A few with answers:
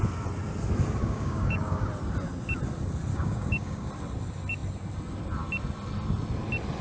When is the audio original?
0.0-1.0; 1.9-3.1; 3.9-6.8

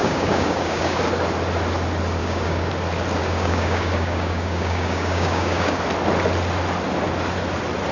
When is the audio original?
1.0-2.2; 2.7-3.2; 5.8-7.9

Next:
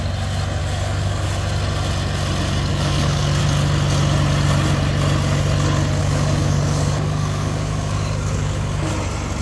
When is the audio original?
0.0-0.6; 1.3-2.7; 3.4-6.0; 8.9-9.4

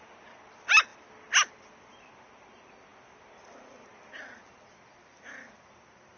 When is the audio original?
0.0-6.2

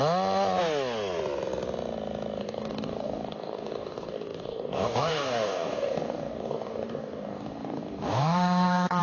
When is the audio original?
0.0-2.4